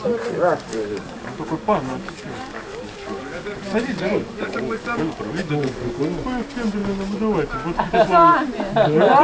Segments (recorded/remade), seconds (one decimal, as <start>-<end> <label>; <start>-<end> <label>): 0.0-0.7 recorded; 0.7-6.0 remade; 6.0-9.2 recorded